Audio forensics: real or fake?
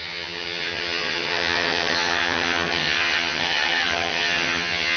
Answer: fake